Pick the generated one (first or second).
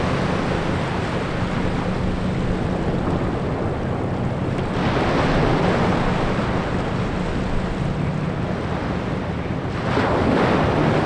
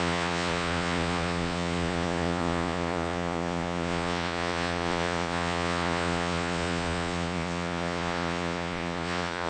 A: second